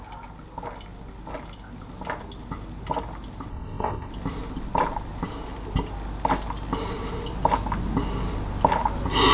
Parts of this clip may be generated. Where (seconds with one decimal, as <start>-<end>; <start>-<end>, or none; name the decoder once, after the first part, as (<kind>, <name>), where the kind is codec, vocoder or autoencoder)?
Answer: 3.5-4.1 (codec, ZipCodec)